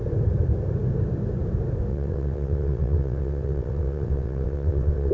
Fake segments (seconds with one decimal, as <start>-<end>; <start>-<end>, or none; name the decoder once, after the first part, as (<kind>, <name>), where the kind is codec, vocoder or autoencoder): 1.9-5.1 (vocoder, WaveNeXt)